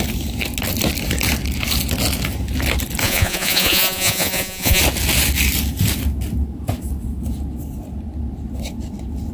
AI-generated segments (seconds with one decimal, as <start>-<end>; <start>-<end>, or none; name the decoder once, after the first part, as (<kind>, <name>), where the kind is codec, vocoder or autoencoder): 3.0-4.8 (vocoder, Vocos)